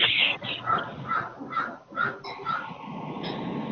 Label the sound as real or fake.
real